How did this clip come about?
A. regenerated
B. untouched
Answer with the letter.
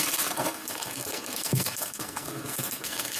A